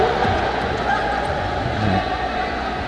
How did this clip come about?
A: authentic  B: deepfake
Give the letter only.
B